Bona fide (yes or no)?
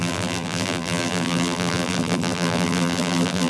no